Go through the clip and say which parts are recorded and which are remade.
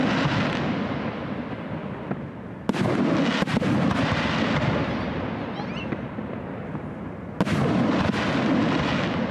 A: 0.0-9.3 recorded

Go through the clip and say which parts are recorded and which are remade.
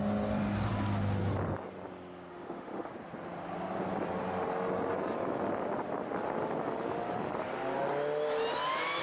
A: 0.0-2.3 recorded; 2.3-2.9 remade; 2.9-9.0 recorded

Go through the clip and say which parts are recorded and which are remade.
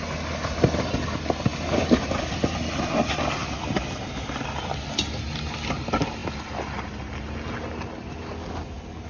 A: 0.0-1.5 recorded; 1.5-2.3 remade; 2.3-9.1 recorded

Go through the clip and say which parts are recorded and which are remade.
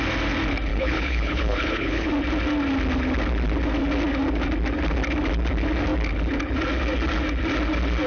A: 0.0-0.7 recorded; 0.7-2.1 remade; 2.1-8.1 recorded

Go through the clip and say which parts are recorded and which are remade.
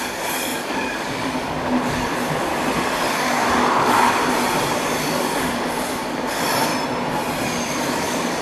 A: 0.0-2.5 remade; 2.5-3.1 recorded; 3.1-4.2 remade; 4.2-5.0 recorded; 5.0-6.7 remade; 6.7-7.8 recorded; 7.8-8.4 remade